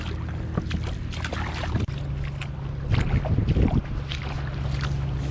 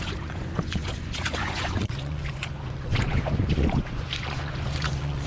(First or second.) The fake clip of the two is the second